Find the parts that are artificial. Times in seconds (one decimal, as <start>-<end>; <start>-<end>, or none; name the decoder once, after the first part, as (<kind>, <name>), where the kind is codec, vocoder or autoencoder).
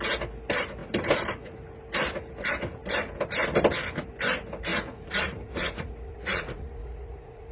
4.7-7.5 (vocoder, Vocos)